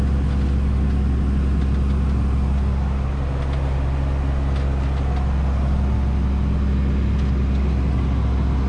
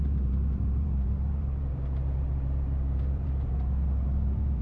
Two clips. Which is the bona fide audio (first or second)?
first